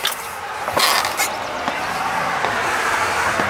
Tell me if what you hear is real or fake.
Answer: real